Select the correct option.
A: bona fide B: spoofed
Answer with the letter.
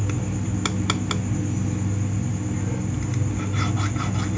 A